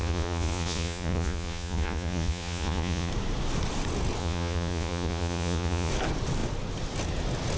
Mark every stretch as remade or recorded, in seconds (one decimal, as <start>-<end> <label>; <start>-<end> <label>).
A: 0.0-3.1 remade; 3.1-4.2 recorded; 4.2-5.9 remade; 5.9-7.6 recorded